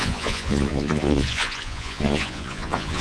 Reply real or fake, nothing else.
fake